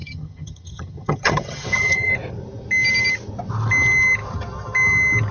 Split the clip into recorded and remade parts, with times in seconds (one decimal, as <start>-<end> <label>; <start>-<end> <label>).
0.0-2.1 remade; 2.1-5.3 recorded

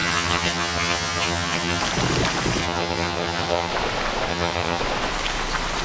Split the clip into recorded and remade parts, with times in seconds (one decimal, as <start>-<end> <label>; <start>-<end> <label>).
0.0-1.8 remade; 1.8-2.6 recorded; 2.6-3.7 remade; 3.7-4.3 recorded; 4.3-4.8 remade; 4.8-5.8 recorded

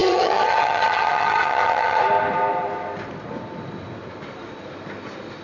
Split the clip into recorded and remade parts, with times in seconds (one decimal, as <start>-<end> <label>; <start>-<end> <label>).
0.0-2.0 remade; 2.0-5.4 recorded

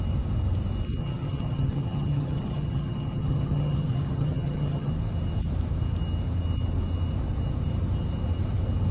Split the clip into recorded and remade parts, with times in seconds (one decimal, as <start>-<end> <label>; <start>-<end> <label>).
0.0-1.0 recorded; 1.0-4.9 remade; 4.9-8.9 recorded

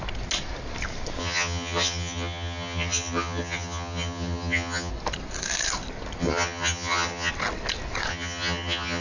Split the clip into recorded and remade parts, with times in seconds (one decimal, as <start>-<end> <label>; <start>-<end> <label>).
0.0-1.2 recorded; 1.2-4.9 remade; 4.9-6.2 recorded; 6.2-7.3 remade; 7.3-8.1 recorded; 8.1-9.0 remade

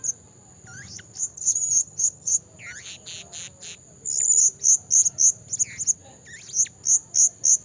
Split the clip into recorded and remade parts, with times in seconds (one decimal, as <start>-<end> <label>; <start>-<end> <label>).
0.0-1.3 recorded; 1.3-2.4 remade; 2.4-7.6 recorded

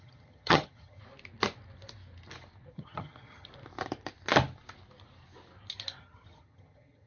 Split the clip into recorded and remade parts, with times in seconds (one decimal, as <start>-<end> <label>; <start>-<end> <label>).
0.0-1.0 remade; 1.0-2.7 recorded; 2.7-3.5 remade; 3.5-6.0 recorded; 6.0-7.1 remade

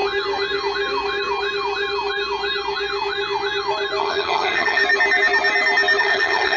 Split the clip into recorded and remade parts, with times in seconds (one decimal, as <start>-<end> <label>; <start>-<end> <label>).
0.0-4.0 recorded; 4.0-4.8 remade; 4.8-6.0 recorded; 6.0-6.6 remade